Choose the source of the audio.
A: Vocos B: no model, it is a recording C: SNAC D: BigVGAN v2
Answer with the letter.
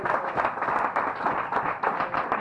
B